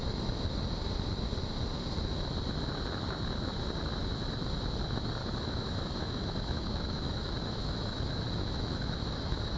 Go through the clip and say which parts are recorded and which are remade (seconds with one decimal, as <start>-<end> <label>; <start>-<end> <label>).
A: 0.0-5.2 recorded; 5.2-9.6 remade

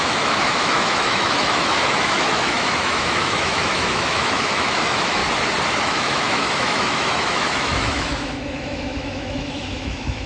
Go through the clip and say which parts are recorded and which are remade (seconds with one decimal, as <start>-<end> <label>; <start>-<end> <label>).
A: 0.0-5.2 remade; 5.2-5.7 recorded; 5.7-10.3 remade

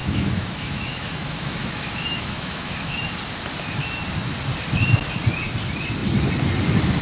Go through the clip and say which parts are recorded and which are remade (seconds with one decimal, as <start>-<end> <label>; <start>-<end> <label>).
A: 0.0-3.0 remade; 3.0-7.0 recorded

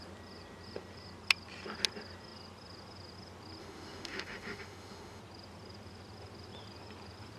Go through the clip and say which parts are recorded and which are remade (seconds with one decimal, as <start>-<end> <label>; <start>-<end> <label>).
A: 0.0-3.6 recorded; 3.6-5.2 remade; 5.2-7.4 recorded

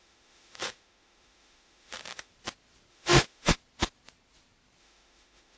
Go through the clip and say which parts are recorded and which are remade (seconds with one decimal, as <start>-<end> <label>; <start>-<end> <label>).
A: 0.0-2.3 remade; 2.3-2.9 recorded; 2.9-3.6 remade; 3.6-4.8 recorded; 4.8-5.6 remade

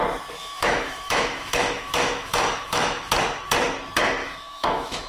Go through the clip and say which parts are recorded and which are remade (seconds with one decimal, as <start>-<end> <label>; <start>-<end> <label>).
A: 0.0-0.4 recorded; 0.4-3.1 remade; 3.1-4.2 recorded; 4.2-5.1 remade